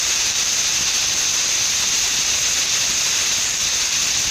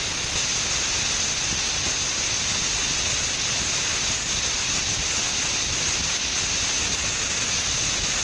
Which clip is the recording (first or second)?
second